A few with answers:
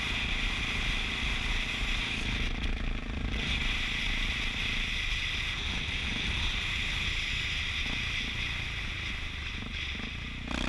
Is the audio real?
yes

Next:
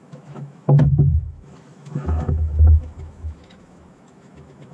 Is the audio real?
no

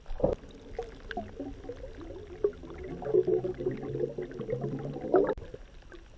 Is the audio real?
yes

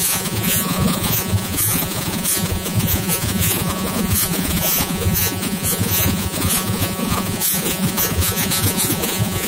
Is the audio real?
no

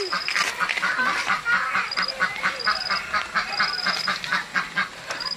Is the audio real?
yes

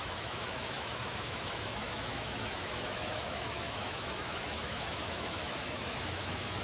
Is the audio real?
no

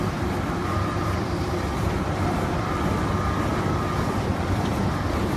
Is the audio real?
no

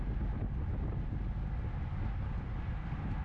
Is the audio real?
yes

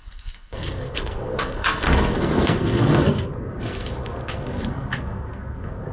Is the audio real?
no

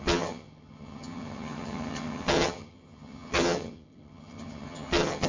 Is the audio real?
no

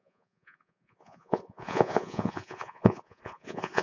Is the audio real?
no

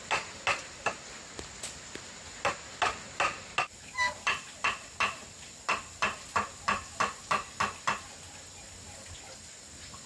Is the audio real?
yes